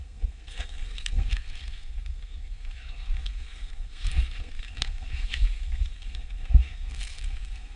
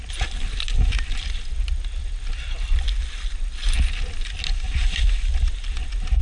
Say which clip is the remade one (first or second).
first